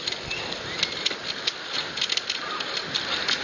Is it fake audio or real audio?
real